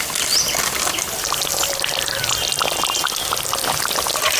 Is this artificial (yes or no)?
no